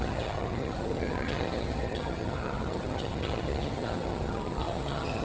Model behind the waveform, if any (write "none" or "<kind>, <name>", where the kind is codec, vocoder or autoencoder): vocoder, HiFi-GAN